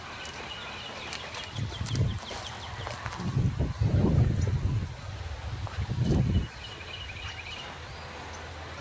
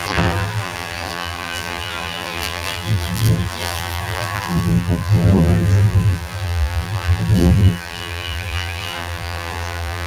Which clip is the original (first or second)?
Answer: first